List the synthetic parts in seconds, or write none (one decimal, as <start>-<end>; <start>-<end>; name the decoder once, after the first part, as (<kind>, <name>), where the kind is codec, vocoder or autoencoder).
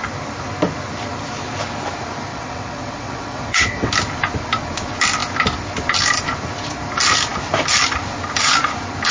2.3-3.9 (vocoder, WaveNeXt)